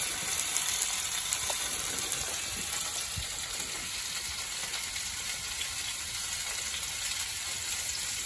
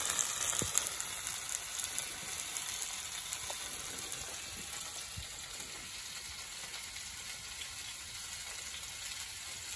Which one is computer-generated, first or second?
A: first